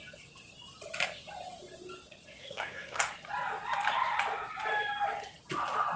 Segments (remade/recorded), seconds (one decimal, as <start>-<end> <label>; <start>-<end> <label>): 0.0-2.4 recorded; 2.4-3.0 remade; 3.0-6.0 recorded